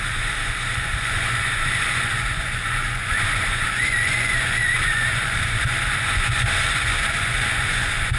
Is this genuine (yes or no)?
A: no